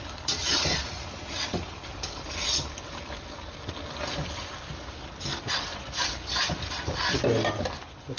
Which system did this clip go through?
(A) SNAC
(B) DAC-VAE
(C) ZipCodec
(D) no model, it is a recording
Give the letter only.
D